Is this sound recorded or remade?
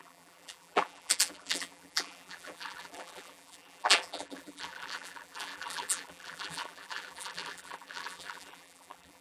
remade